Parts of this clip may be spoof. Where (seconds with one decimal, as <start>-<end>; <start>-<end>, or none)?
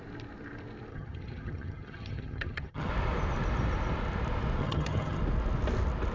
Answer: 0.9-2.9; 4.6-5.2